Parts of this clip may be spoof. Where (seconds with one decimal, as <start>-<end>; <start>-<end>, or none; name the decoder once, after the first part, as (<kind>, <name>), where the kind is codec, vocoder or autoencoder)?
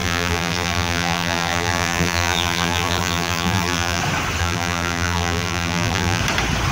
0.0-4.0 (vocoder, BigVGAN v2); 4.4-6.2